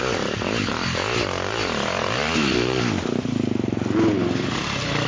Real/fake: real